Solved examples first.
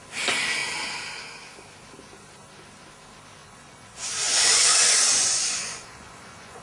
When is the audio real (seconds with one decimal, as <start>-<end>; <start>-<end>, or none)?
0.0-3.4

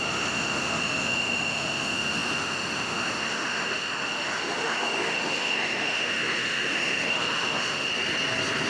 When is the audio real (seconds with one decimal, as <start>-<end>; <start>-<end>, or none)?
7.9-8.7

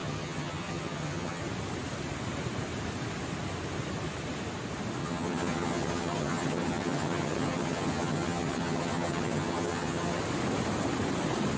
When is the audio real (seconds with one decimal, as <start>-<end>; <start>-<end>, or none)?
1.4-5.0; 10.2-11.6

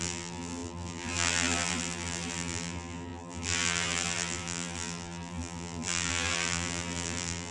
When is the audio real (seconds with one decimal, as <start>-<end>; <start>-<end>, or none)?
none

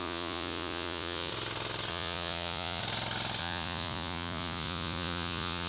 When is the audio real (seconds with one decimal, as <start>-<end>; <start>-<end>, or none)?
1.3-1.9; 2.8-3.4

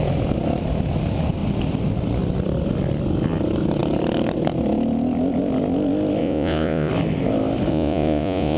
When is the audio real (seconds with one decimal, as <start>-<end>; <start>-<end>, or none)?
0.0-6.2; 6.9-7.7

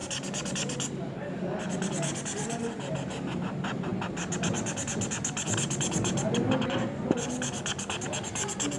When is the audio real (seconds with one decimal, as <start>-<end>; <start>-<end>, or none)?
0.0-1.3; 3.9-6.5